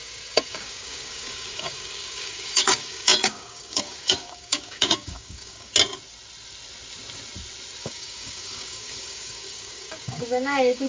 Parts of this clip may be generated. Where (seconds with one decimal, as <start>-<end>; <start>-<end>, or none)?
0.0-5.7; 7.8-10.9

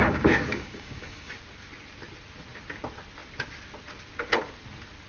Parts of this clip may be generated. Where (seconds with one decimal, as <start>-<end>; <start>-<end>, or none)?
0.0-1.3